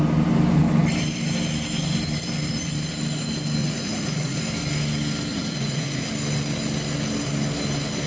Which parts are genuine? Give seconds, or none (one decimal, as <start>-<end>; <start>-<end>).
0.0-3.6; 4.4-5.3; 6.0-8.1